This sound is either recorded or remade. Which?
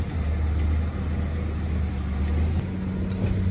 recorded